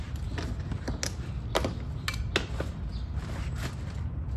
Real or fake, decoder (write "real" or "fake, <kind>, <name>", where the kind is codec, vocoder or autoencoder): real